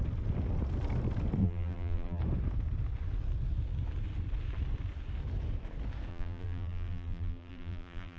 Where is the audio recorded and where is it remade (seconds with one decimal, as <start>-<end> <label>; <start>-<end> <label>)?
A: 0.0-1.4 recorded; 1.4-2.2 remade; 2.2-6.1 recorded; 6.1-8.2 remade